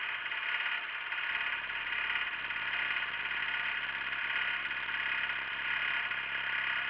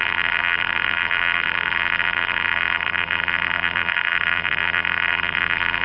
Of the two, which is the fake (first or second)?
second